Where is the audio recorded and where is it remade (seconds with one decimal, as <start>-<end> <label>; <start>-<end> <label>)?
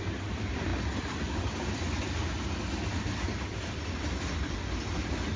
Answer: 0.0-5.4 recorded